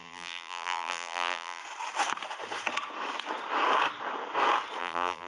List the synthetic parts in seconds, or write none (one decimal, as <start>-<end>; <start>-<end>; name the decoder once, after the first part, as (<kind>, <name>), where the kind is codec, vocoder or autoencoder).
0.0-1.6 (vocoder, BigVGAN v2); 4.8-5.3